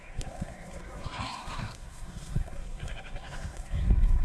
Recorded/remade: remade